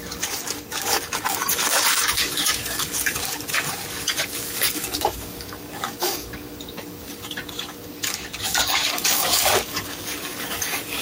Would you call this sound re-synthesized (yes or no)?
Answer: yes